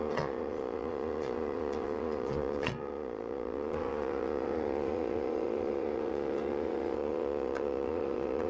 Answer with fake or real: fake